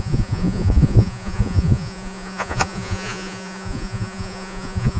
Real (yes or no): no